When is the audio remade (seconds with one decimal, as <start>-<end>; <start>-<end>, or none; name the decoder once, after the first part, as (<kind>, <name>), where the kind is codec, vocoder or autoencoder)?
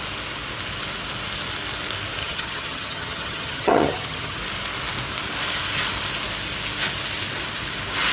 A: 2.2-4.4 (vocoder, HiFi-GAN)